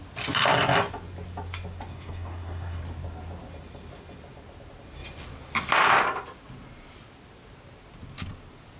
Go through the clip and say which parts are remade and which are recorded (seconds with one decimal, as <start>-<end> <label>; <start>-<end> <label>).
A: 0.0-1.9 recorded; 1.9-2.8 remade; 2.8-8.8 recorded